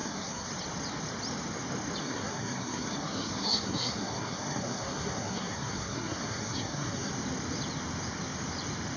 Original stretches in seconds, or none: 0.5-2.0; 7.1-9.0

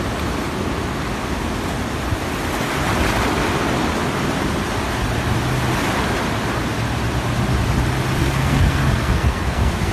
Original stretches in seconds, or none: 0.0-8.2

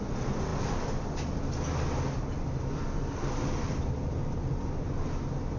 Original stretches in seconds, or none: 0.0-5.6

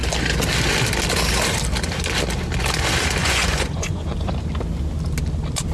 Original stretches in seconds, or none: 0.0-3.2; 4.2-5.7